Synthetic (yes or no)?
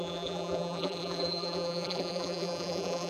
yes